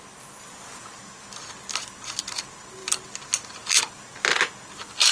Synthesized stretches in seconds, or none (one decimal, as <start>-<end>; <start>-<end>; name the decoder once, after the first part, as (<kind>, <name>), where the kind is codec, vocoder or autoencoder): none